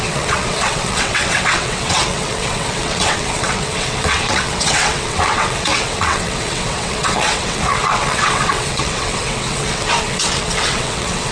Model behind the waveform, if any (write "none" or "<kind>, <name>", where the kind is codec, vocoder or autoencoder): vocoder, WaveNeXt